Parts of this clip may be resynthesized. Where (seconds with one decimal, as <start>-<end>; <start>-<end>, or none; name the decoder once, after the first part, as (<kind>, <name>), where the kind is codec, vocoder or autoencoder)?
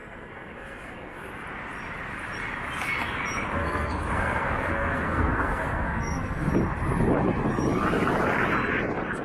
0.0-1.3 (codec, SNAC); 3.6-6.5